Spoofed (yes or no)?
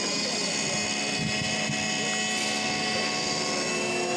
no